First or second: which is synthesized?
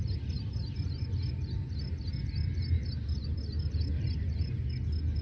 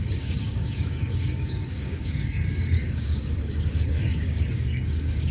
second